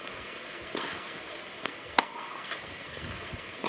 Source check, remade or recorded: remade